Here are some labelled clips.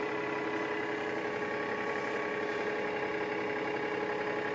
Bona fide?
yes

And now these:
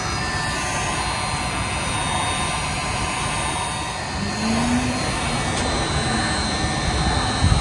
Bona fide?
yes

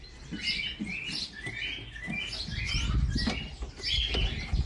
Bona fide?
yes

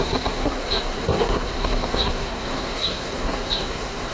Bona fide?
no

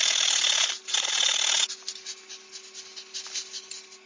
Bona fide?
yes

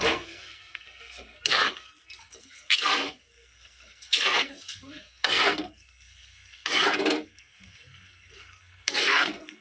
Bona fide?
no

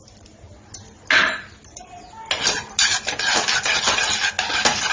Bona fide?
yes